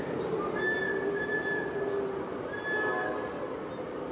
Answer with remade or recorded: recorded